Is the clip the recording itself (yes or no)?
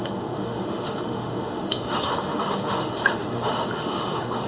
no